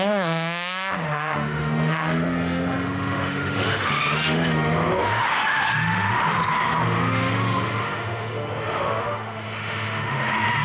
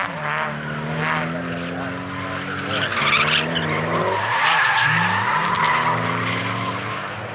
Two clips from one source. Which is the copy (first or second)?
first